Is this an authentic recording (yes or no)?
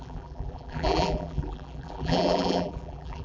no